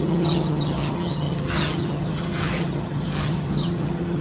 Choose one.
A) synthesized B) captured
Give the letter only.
A